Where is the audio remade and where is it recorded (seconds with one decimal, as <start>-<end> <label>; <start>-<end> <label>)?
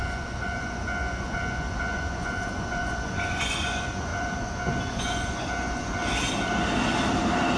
0.0-6.0 remade; 6.0-7.6 recorded